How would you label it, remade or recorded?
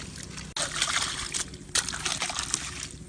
recorded